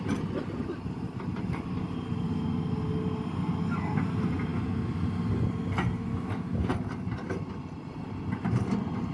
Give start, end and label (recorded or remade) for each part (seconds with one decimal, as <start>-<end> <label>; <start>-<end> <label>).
0.0-9.1 recorded